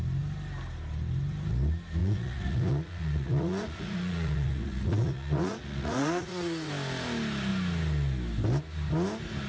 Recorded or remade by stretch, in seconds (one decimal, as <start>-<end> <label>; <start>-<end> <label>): 0.0-2.0 recorded; 2.0-6.7 remade; 6.7-9.5 recorded